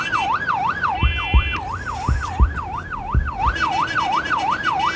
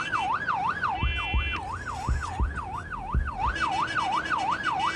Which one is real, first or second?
second